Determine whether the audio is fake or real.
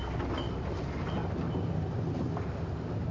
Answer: real